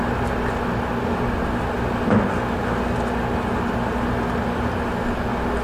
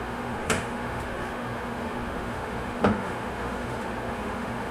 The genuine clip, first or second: first